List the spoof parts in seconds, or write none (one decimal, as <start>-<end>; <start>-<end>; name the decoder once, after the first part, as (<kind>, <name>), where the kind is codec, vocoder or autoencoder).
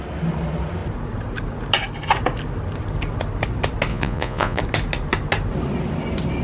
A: 3.9-4.6 (vocoder, Vocos)